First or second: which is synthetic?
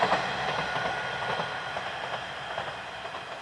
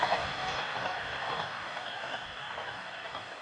second